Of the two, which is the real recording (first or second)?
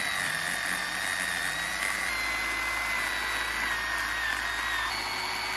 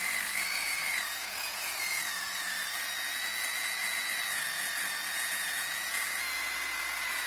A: first